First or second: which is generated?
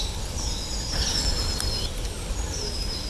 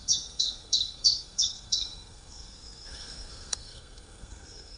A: second